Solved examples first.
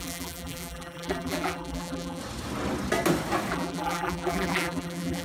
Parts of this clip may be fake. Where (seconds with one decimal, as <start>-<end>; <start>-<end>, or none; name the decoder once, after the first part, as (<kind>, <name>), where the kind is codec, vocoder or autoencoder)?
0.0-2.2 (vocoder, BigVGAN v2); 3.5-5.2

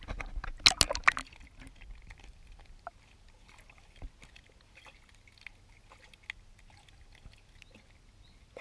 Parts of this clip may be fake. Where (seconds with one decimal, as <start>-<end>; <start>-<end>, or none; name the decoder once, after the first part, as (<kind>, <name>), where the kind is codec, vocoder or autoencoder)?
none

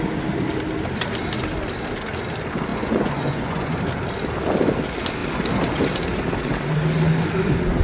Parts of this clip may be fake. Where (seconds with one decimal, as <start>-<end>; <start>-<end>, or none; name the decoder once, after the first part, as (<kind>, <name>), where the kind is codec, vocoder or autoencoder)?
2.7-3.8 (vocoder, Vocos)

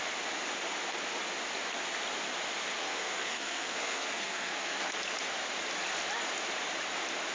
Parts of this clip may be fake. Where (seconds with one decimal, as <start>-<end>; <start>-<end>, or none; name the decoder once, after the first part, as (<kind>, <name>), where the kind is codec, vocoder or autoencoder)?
2.8-4.9 (codec, SNAC)

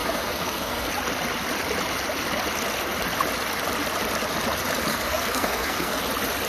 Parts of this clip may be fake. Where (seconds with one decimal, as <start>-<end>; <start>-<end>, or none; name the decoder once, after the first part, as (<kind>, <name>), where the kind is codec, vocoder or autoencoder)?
0.0-0.9 (codec, SNAC); 4.9-6.0